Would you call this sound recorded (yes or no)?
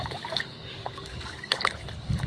no